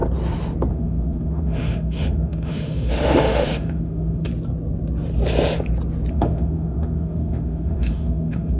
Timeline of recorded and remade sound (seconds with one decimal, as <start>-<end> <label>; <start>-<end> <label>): 0.0-0.7 recorded; 0.7-4.3 remade; 4.3-6.1 recorded; 6.1-8.6 remade

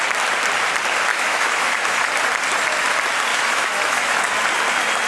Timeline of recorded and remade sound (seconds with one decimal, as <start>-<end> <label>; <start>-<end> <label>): 0.0-1.1 recorded; 1.1-2.1 remade; 2.1-3.3 recorded; 3.3-4.2 remade; 4.2-5.1 recorded

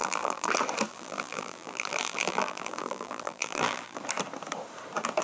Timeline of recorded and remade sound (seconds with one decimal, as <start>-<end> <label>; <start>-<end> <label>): 0.0-0.5 remade; 0.5-0.9 recorded; 0.9-4.0 remade; 4.0-5.2 recorded

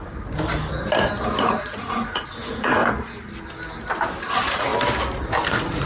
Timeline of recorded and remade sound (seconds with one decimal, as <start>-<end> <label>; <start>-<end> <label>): 0.0-1.4 recorded; 1.4-2.8 remade; 2.8-4.2 recorded; 4.2-4.7 remade; 4.7-5.5 recorded; 5.5-5.9 remade

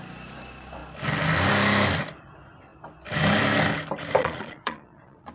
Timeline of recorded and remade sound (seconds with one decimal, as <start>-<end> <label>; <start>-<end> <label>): 0.0-4.2 recorded; 4.2-5.3 remade

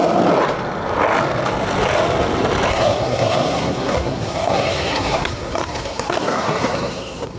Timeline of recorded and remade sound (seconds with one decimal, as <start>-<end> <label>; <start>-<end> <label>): 0.0-2.7 recorded; 2.7-7.4 remade

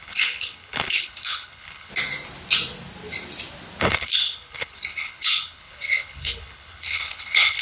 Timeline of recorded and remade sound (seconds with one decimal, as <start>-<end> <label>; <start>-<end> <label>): 0.0-1.9 remade; 1.9-3.8 recorded; 3.8-7.6 remade